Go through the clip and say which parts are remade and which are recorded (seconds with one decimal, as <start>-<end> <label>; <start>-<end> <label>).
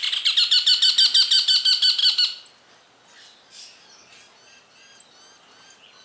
0.0-6.0 recorded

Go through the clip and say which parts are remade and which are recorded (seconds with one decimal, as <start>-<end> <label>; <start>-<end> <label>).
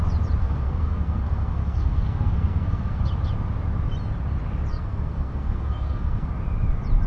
0.0-0.4 recorded; 0.4-3.0 remade; 3.0-4.7 recorded; 4.7-6.3 remade; 6.3-7.1 recorded